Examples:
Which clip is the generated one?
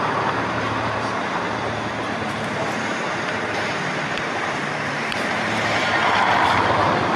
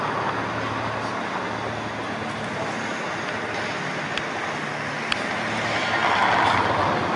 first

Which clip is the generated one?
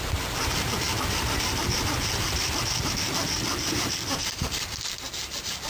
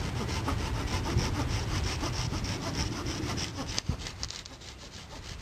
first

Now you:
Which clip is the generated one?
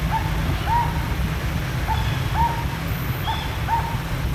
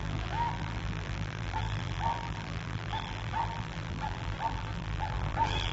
second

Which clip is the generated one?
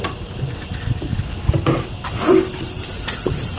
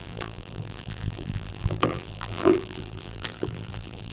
second